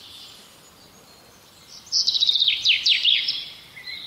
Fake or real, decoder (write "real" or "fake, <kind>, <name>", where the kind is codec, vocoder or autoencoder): real